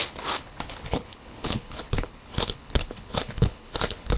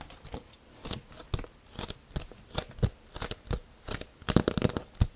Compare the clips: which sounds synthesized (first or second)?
first